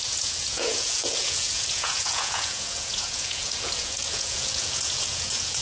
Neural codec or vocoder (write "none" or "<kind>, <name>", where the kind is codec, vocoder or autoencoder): vocoder, Vocos